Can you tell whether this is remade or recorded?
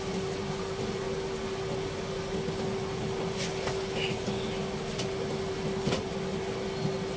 recorded